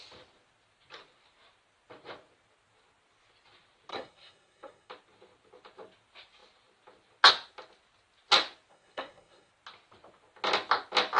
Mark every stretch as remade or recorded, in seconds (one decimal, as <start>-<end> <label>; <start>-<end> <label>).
0.0-3.9 recorded; 3.9-4.9 remade; 4.9-8.7 recorded; 8.7-9.5 remade; 9.5-11.2 recorded